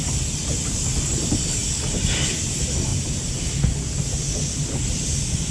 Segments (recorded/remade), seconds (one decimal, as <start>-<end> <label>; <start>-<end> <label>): 0.0-2.9 recorded; 2.9-3.4 remade; 3.4-5.5 recorded